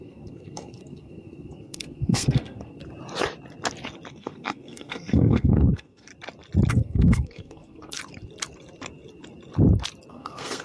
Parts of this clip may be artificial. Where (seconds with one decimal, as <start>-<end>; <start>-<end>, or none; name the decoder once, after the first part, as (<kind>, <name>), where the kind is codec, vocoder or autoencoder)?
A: 0.0-2.8 (codec, SNAC); 4.1-6.1; 6.7-8.0; 10.1-10.6

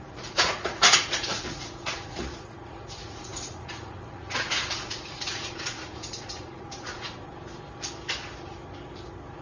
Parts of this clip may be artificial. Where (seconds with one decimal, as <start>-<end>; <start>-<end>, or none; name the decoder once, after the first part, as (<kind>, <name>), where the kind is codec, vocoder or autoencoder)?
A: 0.0-7.2 (vocoder, Vocos)

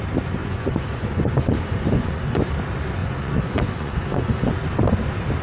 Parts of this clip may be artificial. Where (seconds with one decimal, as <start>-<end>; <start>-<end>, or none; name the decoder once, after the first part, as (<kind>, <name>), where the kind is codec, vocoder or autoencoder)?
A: 0.4-2.4 (vocoder, Vocos); 3.0-4.5